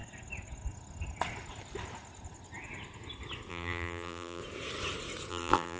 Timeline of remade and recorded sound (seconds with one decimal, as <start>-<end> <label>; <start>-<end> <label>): 0.0-3.5 recorded; 3.5-4.4 remade; 4.4-5.3 recorded; 5.3-5.8 remade